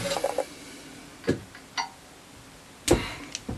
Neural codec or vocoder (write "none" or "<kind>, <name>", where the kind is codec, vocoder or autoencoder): none